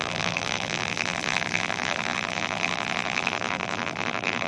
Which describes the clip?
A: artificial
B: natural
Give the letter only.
A